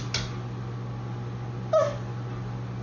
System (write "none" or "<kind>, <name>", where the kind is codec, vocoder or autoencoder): none